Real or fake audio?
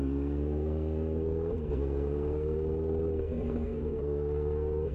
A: fake